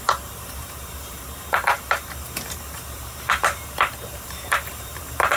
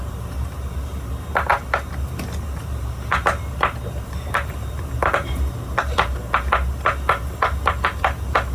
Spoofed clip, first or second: first